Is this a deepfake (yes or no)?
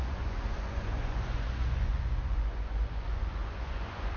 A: yes